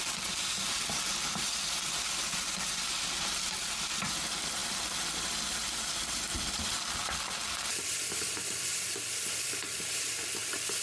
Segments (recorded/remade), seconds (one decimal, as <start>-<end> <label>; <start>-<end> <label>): 0.0-10.8 recorded